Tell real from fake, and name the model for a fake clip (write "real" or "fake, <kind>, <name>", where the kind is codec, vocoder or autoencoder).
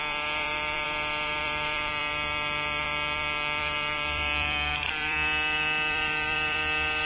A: fake, vocoder, BigVGAN v2